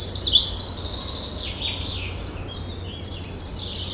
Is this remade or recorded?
recorded